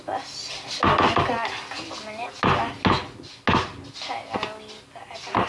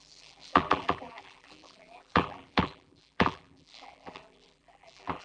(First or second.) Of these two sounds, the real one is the first